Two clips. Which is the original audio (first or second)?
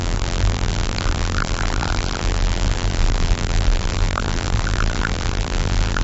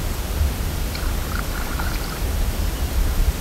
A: second